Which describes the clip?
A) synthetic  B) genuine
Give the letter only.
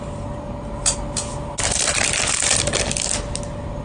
B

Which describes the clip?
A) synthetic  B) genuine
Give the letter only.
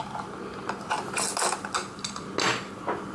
B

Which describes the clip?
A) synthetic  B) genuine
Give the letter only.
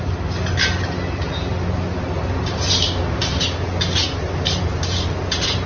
B